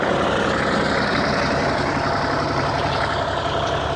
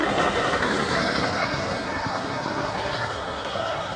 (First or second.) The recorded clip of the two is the first